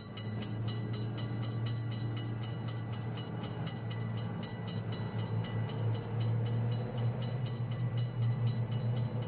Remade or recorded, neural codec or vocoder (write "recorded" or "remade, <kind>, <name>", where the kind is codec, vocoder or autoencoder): recorded